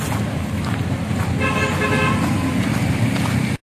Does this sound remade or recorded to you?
recorded